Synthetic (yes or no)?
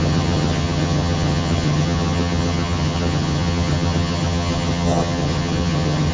yes